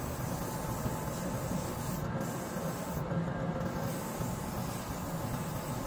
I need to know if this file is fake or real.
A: real